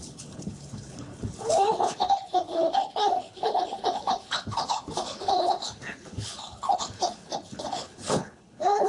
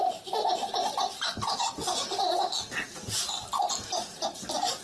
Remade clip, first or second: first